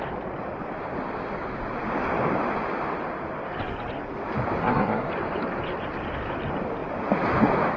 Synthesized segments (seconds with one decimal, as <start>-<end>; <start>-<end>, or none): 4.6-5.1